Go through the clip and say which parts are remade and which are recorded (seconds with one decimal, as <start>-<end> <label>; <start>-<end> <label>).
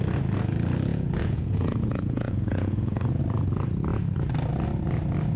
0.0-0.9 recorded; 0.9-3.2 remade; 3.2-5.4 recorded